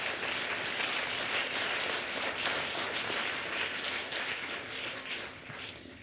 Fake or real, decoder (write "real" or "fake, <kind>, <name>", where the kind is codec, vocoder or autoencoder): real